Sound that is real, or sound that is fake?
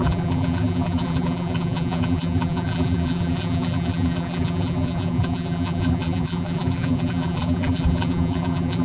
fake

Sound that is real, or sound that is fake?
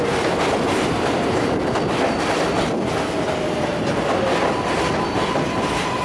real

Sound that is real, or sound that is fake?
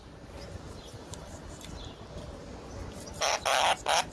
real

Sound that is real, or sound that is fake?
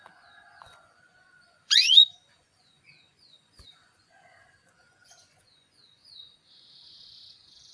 fake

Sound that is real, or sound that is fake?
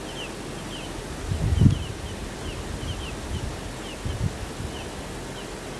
real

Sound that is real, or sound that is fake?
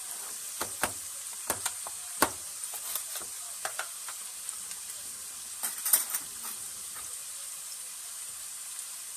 real